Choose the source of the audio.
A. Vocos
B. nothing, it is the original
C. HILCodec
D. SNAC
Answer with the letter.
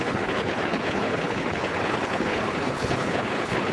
C